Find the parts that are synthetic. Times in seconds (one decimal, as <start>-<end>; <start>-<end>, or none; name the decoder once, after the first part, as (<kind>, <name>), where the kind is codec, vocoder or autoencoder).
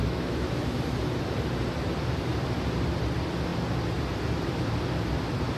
0.0-0.8 (autoencoder, DAC-VAE)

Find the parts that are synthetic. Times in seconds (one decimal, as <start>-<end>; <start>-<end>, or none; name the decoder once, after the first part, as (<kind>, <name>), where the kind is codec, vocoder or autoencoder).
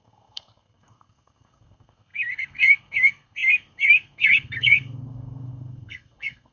0.0-6.5 (codec, SNAC)